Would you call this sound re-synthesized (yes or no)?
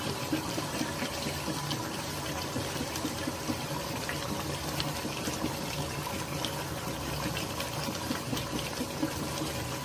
yes